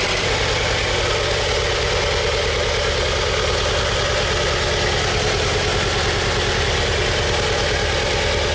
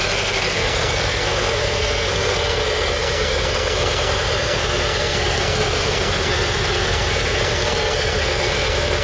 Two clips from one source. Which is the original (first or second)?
first